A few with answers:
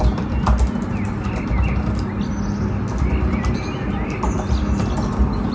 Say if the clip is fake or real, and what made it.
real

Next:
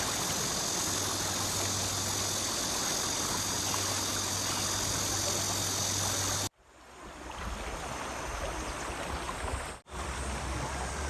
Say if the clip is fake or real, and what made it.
real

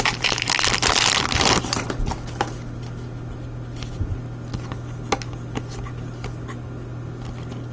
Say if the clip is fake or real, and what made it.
real